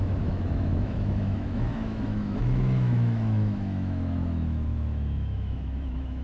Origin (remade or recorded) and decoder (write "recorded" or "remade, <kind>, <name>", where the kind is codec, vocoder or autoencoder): remade, autoencoder, DAC-VAE